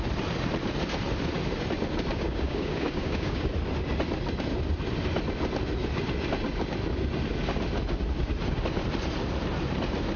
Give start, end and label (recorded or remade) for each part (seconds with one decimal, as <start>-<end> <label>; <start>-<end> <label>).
0.0-2.1 recorded; 2.1-3.5 remade; 3.5-10.2 recorded